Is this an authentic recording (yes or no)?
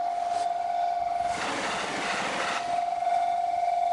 yes